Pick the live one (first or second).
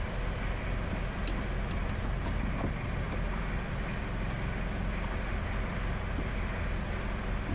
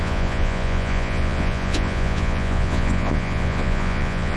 first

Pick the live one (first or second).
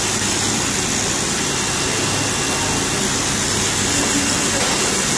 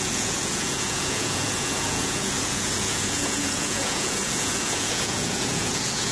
first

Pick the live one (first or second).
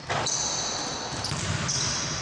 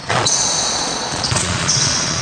first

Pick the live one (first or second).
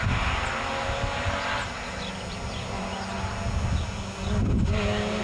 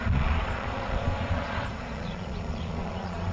first